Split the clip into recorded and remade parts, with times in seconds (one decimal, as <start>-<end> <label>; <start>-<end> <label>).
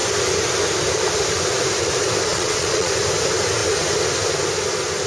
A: 0.0-2.3 recorded; 2.3-2.9 remade; 2.9-5.1 recorded